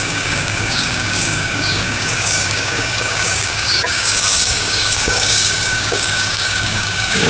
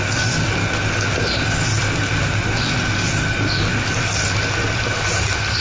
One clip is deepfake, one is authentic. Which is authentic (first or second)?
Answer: second